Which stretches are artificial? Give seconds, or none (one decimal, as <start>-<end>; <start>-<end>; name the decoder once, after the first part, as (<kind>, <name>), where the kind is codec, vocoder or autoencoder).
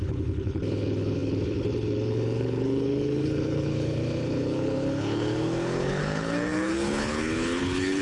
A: 0.0-8.0 (codec, HILCodec)